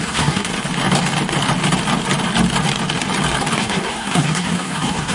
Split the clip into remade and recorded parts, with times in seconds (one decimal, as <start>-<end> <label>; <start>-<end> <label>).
0.0-0.5 remade; 0.5-3.6 recorded; 3.6-5.1 remade